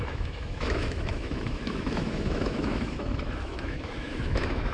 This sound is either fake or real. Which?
fake